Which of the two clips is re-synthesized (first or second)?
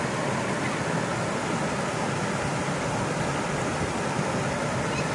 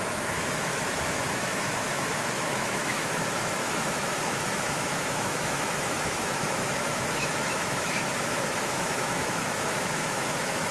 second